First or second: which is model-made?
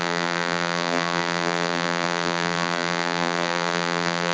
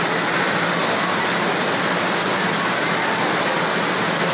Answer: first